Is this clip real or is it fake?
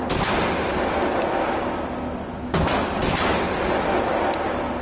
real